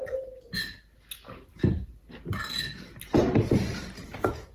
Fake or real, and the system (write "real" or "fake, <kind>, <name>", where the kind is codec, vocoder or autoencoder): real